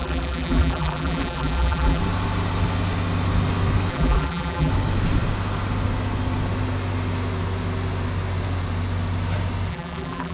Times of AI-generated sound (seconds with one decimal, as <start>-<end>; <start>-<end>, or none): 0.0-2.0; 3.9-4.7; 9.7-10.3